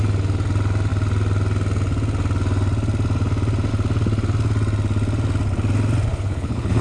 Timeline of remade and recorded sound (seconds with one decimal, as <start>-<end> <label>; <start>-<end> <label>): 0.0-6.1 recorded; 6.1-6.8 remade